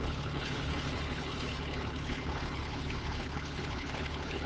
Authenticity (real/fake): fake